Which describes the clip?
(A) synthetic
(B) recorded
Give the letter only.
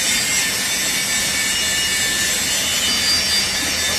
B